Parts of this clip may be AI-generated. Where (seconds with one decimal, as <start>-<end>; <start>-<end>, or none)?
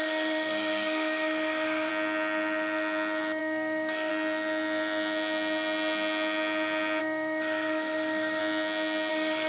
0.0-1.9; 3.4-4.1; 7.0-8.4; 9.1-9.5